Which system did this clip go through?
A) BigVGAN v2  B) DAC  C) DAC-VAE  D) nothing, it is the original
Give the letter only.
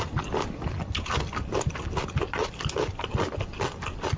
D